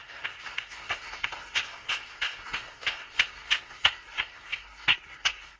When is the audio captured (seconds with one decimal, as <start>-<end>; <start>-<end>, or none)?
none